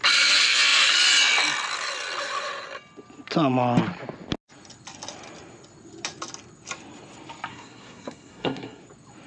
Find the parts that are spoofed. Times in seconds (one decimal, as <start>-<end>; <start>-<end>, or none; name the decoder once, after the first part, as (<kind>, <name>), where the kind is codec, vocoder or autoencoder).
7.5-8.8 (codec, SNAC)